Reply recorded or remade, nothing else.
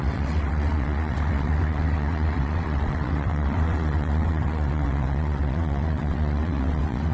remade